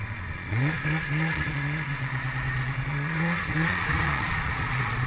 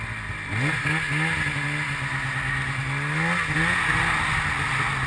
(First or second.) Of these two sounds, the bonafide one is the second